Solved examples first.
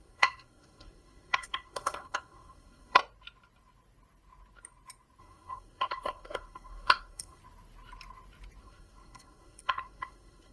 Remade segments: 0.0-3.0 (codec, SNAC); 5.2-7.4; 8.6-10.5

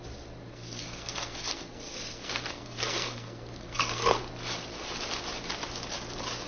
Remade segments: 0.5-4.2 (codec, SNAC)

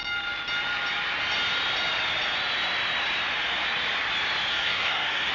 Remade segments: 4.5-5.3 (codec, SNAC)